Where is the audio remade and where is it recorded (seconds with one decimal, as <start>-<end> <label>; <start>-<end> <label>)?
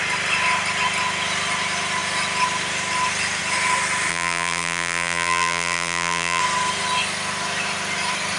0.0-4.1 recorded; 4.1-6.4 remade; 6.4-8.4 recorded